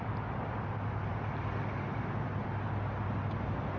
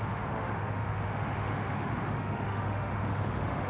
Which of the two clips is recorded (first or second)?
first